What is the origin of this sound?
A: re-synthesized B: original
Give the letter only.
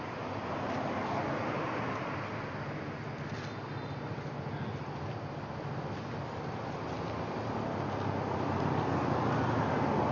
B